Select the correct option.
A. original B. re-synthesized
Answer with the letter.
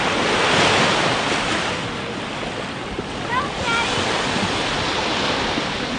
A